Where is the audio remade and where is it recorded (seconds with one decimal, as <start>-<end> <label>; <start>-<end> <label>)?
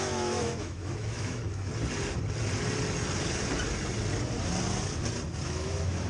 0.0-1.7 remade; 1.7-5.4 recorded; 5.4-6.1 remade